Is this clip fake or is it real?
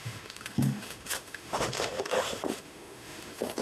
fake